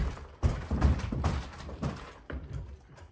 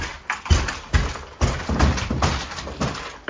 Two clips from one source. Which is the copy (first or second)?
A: first